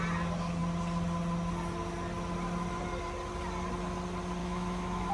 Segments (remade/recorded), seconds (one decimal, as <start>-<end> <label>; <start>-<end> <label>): 0.0-4.4 recorded; 4.4-5.1 remade